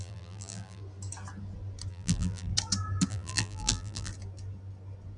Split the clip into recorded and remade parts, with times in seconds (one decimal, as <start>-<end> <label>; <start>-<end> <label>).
0.0-0.8 remade; 0.8-1.9 recorded; 1.9-2.5 remade; 2.5-3.1 recorded; 3.1-4.1 remade; 4.1-5.2 recorded